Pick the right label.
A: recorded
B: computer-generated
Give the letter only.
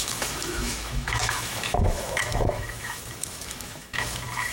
B